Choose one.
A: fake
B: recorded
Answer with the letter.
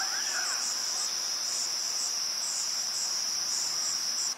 A